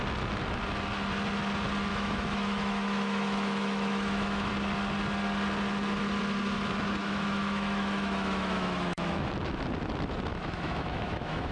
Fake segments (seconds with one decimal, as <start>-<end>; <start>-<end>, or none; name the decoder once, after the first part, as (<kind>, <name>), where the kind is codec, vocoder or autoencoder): 1.9-4.5 (autoencoder, DAC-VAE); 7.0-9.3; 10.3-11.5